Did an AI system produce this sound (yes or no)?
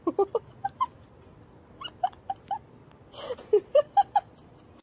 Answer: no